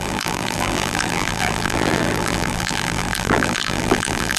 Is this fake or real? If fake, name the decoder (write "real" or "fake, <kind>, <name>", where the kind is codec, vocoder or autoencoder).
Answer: fake, vocoder, BigVGAN v2